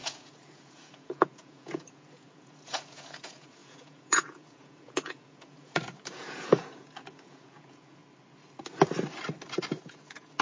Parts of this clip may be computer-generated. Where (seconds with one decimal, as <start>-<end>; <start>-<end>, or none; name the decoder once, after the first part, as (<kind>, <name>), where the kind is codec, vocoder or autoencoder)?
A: 0.0-8.0 (vocoder, Vocos); 9.8-10.4